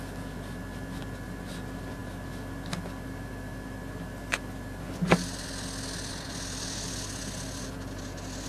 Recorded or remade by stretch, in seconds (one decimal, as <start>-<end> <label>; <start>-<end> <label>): 0.0-8.5 recorded